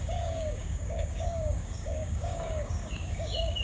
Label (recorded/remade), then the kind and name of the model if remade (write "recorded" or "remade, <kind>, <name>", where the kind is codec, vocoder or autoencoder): remade, codec, DAC